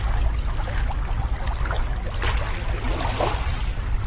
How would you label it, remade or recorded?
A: recorded